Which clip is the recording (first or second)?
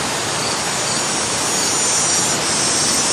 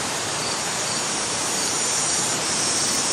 first